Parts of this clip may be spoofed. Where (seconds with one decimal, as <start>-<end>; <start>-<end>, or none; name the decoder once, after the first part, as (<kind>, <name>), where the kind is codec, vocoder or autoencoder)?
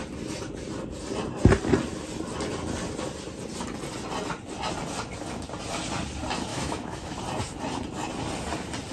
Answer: 6.5-7.2 (autoencoder, DAC-VAE)